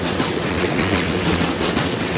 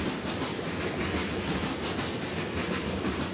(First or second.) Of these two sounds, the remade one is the first